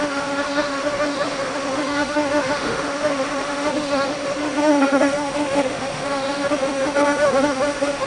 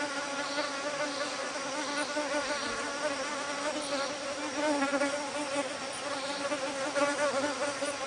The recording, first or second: second